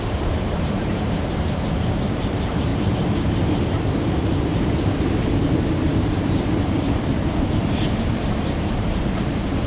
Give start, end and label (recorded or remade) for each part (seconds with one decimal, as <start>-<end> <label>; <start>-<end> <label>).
0.0-2.7 remade; 2.7-3.8 recorded; 3.8-4.5 remade; 4.5-5.3 recorded; 5.3-9.7 remade